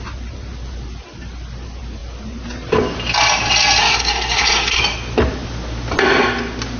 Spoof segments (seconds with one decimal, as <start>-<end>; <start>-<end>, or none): 3.8-4.8